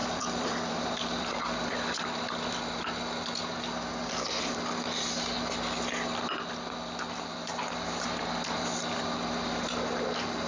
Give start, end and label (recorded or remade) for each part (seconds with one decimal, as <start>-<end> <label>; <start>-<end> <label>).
0.0-1.4 remade; 1.4-10.5 recorded

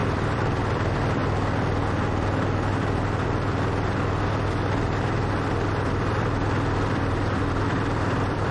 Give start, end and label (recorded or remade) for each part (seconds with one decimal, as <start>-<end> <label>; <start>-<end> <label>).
0.0-1.2 remade; 1.2-5.5 recorded; 5.5-8.5 remade

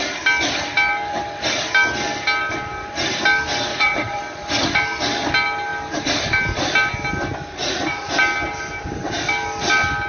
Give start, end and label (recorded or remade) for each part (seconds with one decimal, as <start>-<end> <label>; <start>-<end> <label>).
0.0-3.7 recorded; 3.7-4.2 remade; 4.2-7.6 recorded; 7.6-8.2 remade; 8.2-10.1 recorded

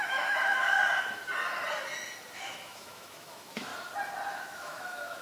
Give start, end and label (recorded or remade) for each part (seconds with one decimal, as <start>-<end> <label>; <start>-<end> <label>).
0.0-0.8 remade; 0.8-2.3 recorded; 2.3-3.7 remade; 3.7-4.3 recorded; 4.3-5.2 remade